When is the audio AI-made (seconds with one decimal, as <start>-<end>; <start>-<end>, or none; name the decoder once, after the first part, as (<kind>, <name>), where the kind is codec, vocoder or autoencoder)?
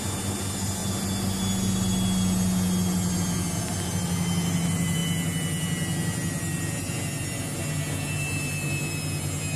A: none